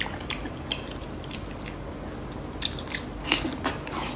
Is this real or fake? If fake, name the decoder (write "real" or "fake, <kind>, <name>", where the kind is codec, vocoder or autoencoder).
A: real